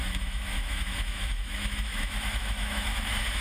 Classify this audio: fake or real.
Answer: fake